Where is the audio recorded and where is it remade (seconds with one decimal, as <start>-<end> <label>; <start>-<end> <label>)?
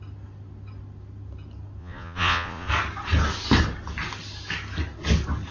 0.0-1.8 recorded; 1.8-2.7 remade; 2.7-5.5 recorded